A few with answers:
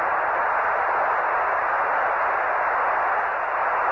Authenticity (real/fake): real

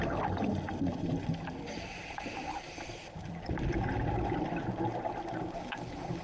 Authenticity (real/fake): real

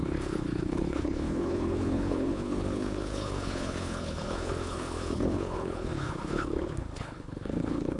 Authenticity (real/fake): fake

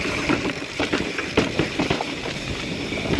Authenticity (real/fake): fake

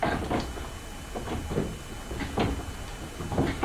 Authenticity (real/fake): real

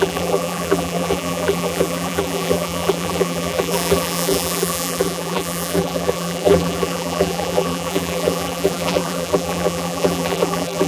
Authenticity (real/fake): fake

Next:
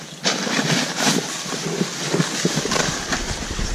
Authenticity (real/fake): real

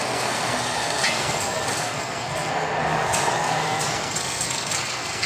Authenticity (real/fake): fake